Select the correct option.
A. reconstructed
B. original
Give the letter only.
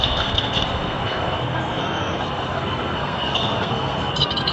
A